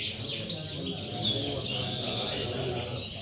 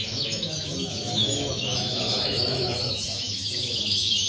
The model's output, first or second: second